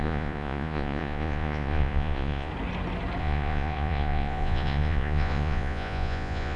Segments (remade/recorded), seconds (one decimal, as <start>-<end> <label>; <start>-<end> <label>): 0.0-2.5 remade; 2.5-3.2 recorded; 3.2-6.6 remade